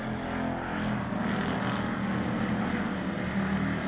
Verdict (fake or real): real